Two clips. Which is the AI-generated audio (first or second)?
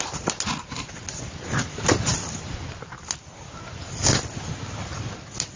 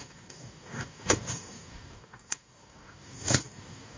second